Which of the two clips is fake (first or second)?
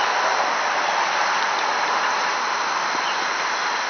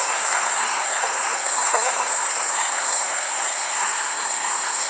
second